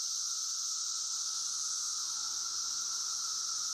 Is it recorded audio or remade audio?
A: recorded